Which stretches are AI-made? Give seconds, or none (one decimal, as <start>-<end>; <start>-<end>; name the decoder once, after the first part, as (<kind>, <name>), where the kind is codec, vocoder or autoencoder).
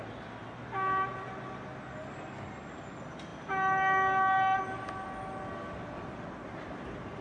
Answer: none